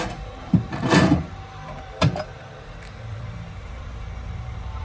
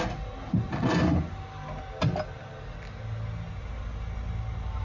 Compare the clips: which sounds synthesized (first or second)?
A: first